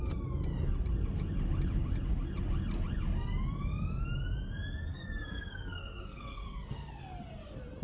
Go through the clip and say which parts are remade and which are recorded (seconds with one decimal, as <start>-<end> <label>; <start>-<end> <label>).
0.0-4.9 recorded; 4.9-7.0 remade; 7.0-7.8 recorded